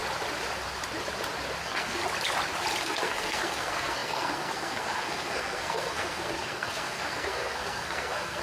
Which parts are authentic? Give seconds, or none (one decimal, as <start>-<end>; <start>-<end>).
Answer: 0.0-1.6; 2.0-2.8